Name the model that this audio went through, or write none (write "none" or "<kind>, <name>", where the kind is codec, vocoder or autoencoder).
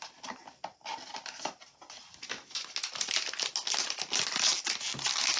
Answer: none